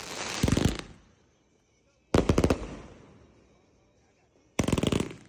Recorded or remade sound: recorded